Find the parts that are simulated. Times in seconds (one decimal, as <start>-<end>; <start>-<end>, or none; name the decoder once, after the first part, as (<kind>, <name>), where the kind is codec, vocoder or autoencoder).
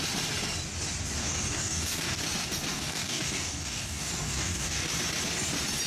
1.2-2.2 (codec, DAC); 2.7-4.9